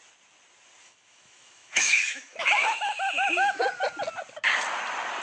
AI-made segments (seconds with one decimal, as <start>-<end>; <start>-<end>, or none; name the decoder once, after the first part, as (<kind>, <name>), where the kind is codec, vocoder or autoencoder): 0.8-3.6 (autoencoder, DAC-VAE)